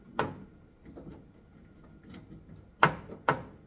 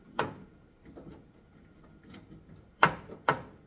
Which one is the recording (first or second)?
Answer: first